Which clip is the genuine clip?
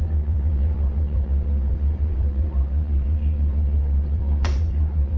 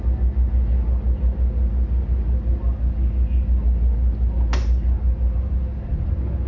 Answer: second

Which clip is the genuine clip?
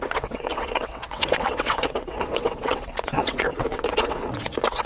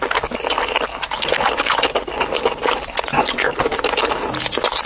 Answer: second